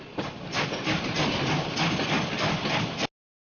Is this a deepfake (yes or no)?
no